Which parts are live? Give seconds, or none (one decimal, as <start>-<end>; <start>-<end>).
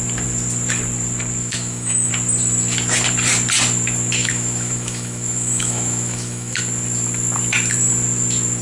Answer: 0.0-1.4; 2.1-4.2; 6.6-8.6